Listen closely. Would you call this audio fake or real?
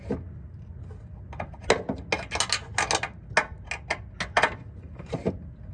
real